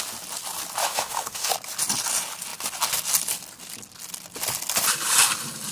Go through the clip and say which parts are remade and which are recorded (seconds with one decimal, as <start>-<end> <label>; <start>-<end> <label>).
0.0-0.8 recorded; 0.8-1.5 remade; 1.5-5.7 recorded